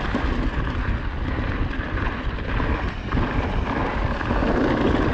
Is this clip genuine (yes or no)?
yes